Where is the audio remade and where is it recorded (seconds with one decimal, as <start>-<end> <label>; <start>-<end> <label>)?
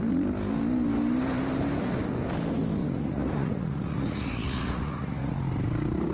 0.0-2.8 recorded; 2.8-5.3 remade; 5.3-6.1 recorded